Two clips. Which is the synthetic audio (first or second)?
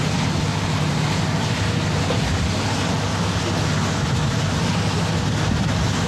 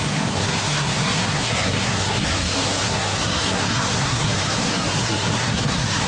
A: second